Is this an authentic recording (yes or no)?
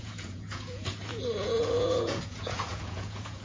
no